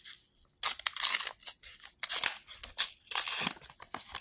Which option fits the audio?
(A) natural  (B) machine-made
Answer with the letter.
A